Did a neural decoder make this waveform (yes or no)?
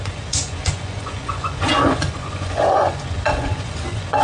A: yes